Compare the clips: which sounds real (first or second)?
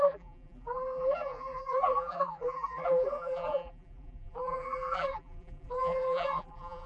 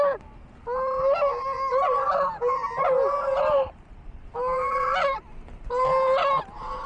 second